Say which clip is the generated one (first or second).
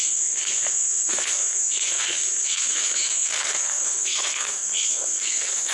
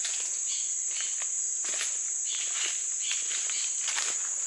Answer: first